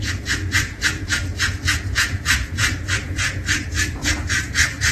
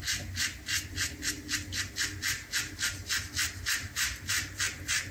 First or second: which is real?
second